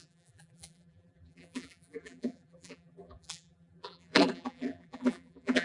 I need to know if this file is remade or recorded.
remade